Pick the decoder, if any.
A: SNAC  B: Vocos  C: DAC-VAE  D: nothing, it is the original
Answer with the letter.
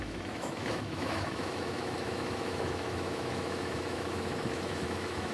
C